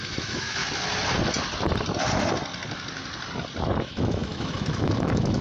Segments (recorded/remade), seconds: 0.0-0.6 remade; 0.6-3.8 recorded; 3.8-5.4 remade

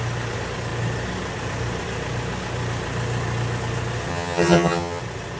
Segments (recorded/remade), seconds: 0.0-4.1 recorded; 4.1-5.0 remade; 5.0-5.4 recorded

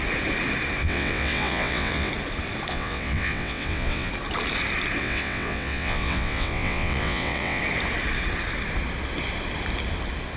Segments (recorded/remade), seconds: 0.0-0.8 recorded; 0.8-2.1 remade; 2.1-2.7 recorded; 2.7-4.1 remade; 4.1-5.0 recorded; 5.0-7.6 remade; 7.6-10.4 recorded

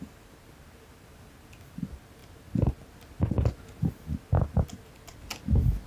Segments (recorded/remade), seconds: 0.0-5.9 recorded

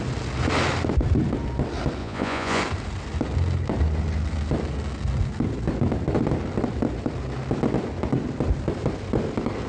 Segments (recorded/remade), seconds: 0.0-2.0 recorded; 2.0-2.6 remade; 2.6-9.7 recorded

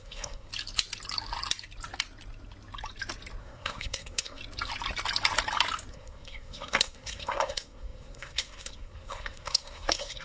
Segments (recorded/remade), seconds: 0.0-0.5 remade; 0.5-3.4 recorded; 3.4-4.4 remade; 4.4-5.9 recorded; 5.9-10.2 remade

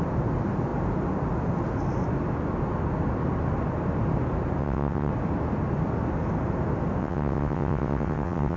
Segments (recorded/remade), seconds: 0.0-4.6 recorded; 4.6-5.1 remade; 5.1-7.0 recorded; 7.0-8.6 remade

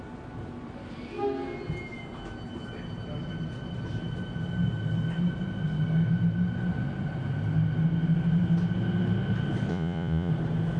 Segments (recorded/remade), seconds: 0.0-9.7 recorded; 9.7-10.3 remade; 10.3-10.8 recorded